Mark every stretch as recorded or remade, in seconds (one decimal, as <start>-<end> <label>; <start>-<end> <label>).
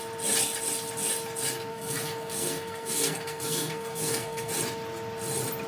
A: 0.0-1.7 recorded; 1.7-4.5 remade; 4.5-5.7 recorded